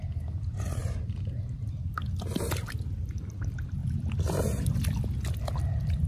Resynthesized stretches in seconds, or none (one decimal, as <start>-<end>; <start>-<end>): none